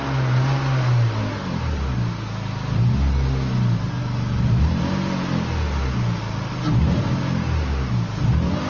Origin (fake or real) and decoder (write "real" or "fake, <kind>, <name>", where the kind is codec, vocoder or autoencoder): real